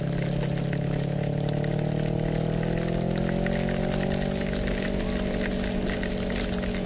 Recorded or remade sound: recorded